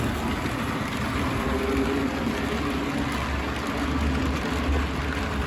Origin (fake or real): real